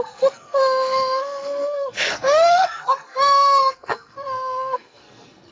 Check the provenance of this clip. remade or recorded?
remade